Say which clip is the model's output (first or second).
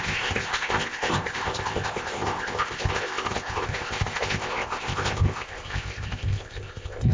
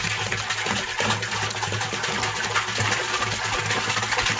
first